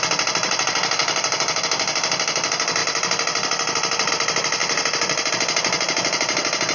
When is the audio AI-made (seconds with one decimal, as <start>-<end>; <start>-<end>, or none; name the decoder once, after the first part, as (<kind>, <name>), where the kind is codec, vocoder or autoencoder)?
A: 1.0-1.6 (vocoder, BigVGAN v2); 2.8-4.1; 4.6-5.3